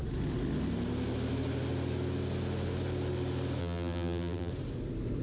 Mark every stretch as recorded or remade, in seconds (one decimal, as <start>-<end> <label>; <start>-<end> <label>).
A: 0.0-3.6 recorded; 3.6-4.5 remade; 4.5-5.2 recorded